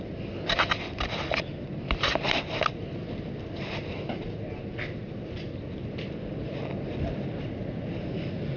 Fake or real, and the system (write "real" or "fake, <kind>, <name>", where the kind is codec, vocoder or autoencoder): real